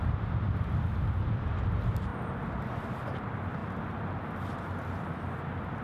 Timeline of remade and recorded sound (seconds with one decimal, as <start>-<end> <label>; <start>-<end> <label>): 0.0-5.8 recorded